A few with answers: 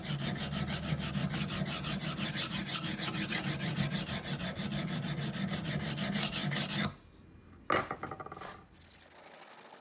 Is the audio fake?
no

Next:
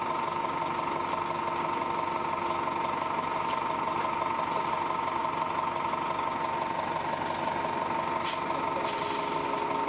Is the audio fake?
no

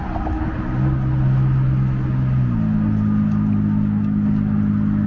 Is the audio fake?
no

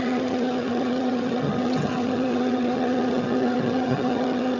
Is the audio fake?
yes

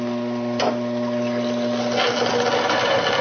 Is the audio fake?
no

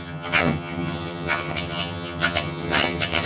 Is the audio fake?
yes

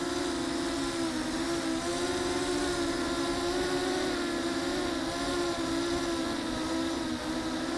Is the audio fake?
no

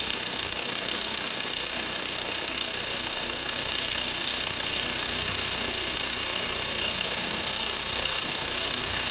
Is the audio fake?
yes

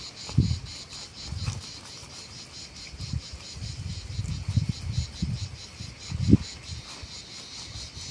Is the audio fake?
no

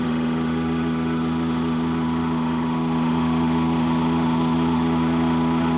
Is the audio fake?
yes